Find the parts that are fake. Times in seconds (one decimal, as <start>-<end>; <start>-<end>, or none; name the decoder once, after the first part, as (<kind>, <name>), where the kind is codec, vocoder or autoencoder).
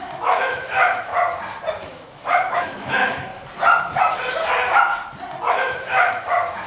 0.0-1.1 (autoencoder, DAC-VAE); 1.7-3.3; 5.5-6.7